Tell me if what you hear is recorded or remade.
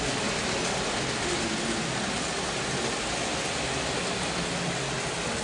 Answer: recorded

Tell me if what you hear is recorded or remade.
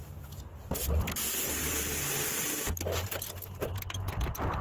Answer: recorded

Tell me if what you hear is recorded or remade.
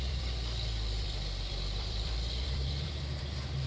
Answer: remade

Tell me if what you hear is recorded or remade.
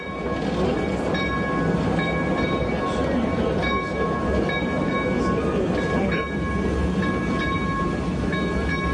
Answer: recorded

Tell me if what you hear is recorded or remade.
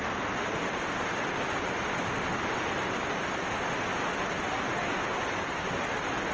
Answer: recorded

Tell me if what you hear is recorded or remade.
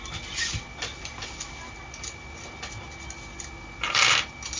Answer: recorded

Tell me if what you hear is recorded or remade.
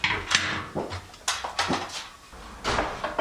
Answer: recorded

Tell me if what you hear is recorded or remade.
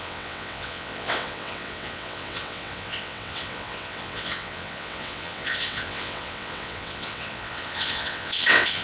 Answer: remade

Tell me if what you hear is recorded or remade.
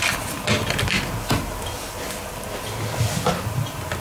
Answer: recorded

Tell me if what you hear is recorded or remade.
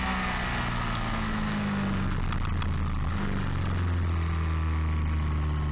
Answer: recorded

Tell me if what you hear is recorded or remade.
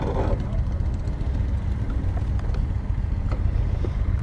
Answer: recorded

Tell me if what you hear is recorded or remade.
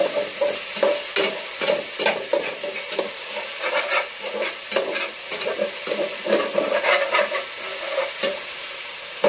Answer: recorded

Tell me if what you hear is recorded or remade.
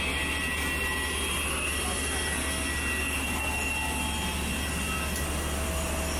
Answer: recorded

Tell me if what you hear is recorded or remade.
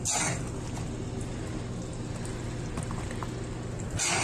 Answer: recorded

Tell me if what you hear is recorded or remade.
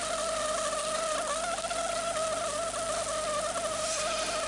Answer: recorded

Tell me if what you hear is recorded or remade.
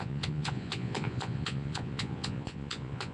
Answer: remade